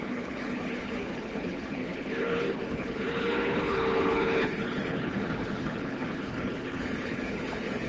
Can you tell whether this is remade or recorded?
remade